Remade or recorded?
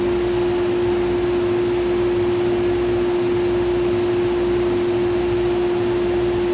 recorded